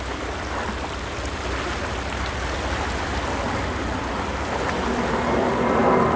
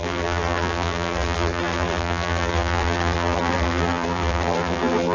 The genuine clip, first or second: first